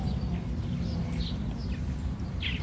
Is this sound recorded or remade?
recorded